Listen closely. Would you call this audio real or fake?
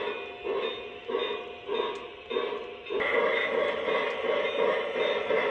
real